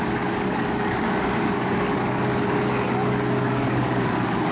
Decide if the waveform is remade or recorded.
remade